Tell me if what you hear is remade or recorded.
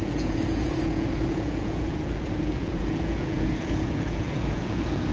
remade